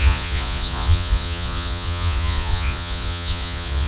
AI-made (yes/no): yes